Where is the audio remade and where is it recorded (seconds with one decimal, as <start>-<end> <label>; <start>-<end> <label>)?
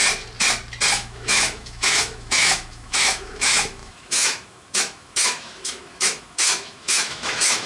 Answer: 0.0-0.9 recorded; 0.9-7.7 remade